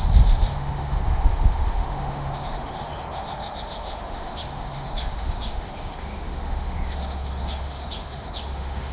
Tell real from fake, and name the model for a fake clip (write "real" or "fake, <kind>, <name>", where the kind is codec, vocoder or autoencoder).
fake, autoencoder, DAC-VAE